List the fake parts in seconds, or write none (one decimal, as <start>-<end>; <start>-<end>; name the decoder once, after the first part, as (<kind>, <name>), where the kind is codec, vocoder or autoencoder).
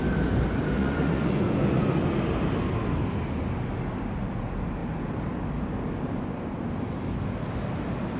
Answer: 0.8-2.0 (vocoder, Vocos)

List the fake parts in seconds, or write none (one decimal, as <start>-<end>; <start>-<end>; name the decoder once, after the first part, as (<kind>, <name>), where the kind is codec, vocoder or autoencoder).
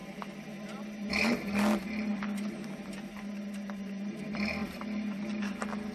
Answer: none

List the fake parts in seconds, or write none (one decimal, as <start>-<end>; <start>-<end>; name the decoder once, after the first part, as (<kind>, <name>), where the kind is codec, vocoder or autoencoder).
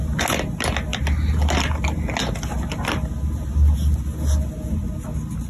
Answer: none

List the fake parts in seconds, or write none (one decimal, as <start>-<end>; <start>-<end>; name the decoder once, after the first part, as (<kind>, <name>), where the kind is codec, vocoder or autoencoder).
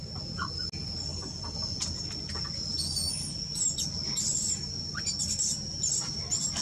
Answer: none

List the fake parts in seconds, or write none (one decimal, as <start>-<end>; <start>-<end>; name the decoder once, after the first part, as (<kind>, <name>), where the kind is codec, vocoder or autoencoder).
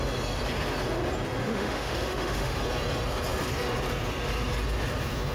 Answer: 1.4-2.6 (autoencoder, DAC-VAE)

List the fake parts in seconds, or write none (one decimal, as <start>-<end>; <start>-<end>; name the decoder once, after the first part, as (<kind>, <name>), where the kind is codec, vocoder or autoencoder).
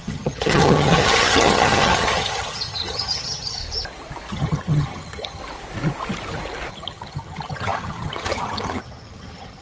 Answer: 0.0-3.6 (vocoder, HiFi-GAN); 4.3-5.4; 6.7-9.6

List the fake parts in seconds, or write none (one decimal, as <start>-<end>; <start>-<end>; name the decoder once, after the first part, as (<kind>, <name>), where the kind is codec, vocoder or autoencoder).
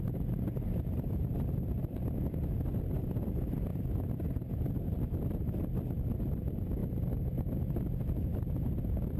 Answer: none